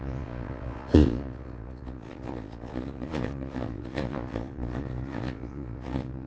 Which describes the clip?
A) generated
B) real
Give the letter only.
A